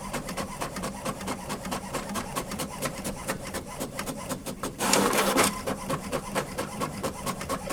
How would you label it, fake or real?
fake